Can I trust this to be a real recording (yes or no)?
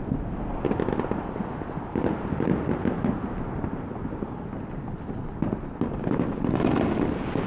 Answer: yes